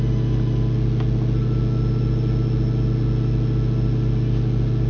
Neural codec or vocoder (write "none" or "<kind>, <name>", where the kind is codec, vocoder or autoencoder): none